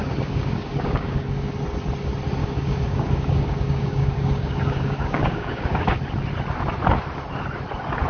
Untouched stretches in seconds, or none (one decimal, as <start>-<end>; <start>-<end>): 1.5-2.4; 6.0-8.1